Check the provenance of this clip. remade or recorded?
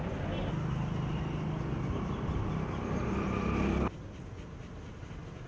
recorded